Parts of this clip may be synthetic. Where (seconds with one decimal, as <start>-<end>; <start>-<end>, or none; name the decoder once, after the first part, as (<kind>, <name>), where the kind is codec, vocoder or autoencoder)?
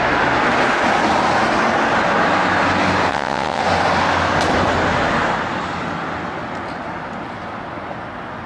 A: 3.1-3.6 (vocoder, WaveNeXt)